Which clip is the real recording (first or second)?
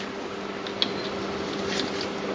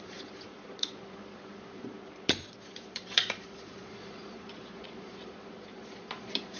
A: first